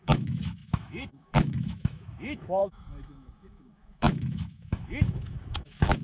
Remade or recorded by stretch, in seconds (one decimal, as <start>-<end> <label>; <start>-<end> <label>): 0.0-6.0 remade